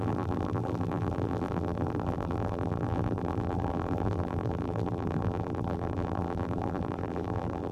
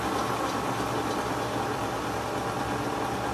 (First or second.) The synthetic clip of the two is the first